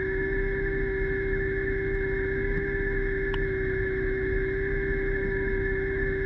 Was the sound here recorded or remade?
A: remade